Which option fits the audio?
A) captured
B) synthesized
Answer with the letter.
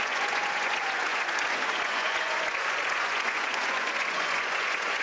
B